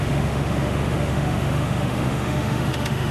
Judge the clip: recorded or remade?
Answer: remade